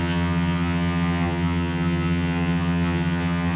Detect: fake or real fake